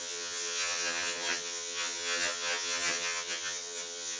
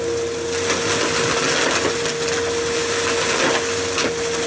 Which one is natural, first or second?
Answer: second